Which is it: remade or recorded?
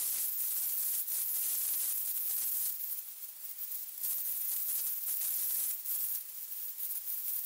remade